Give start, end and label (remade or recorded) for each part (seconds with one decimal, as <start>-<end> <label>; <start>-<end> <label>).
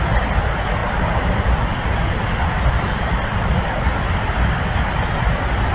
0.0-5.7 recorded